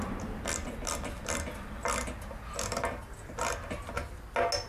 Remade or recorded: recorded